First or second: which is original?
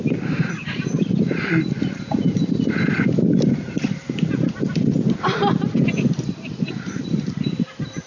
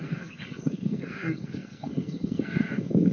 first